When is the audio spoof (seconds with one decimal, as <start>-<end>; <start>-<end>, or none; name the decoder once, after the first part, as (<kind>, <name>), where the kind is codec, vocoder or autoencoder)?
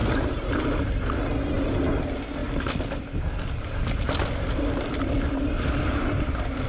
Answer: none